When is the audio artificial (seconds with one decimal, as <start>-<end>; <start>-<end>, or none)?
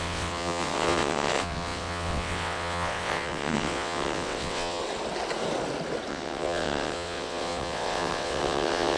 0.0-4.8; 6.1-9.0